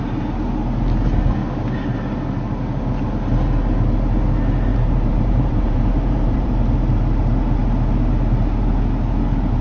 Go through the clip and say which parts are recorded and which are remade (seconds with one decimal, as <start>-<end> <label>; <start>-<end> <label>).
0.0-4.7 recorded; 4.7-6.6 remade; 6.6-9.6 recorded

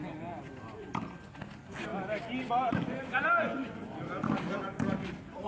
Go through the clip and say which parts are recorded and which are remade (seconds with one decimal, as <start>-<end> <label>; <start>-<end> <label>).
0.0-5.5 recorded

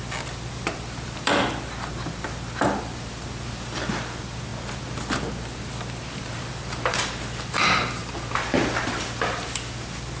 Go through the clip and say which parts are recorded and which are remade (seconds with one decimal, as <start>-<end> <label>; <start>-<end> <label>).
0.0-4.5 remade; 4.5-6.5 recorded; 6.5-10.2 remade

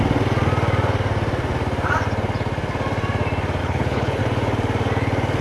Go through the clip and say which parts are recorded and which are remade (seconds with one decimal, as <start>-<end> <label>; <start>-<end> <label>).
0.0-3.6 recorded; 3.6-4.2 remade; 4.2-5.4 recorded

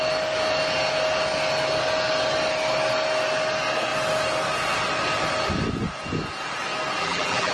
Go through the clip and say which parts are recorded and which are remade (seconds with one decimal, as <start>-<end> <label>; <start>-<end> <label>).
0.0-7.0 recorded; 7.0-7.5 remade

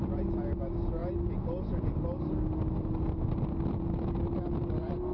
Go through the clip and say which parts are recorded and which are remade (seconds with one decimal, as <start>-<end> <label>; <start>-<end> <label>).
0.0-5.1 recorded